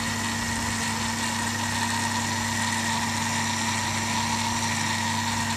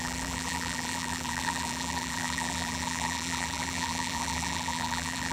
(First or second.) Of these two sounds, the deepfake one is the second